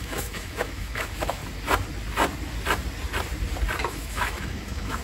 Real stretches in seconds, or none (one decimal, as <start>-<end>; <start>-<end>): 1.4-3.8